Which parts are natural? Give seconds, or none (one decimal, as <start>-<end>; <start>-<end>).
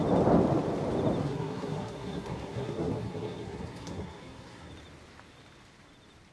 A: 0.0-1.2; 4.7-6.3